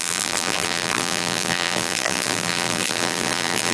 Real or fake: fake